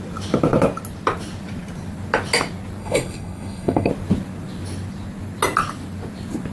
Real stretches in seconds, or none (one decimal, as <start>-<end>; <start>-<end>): 0.0-2.8; 3.9-6.5